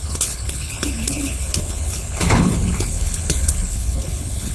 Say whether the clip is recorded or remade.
remade